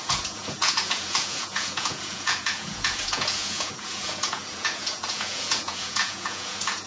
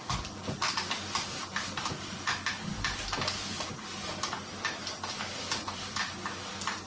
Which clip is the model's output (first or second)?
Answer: first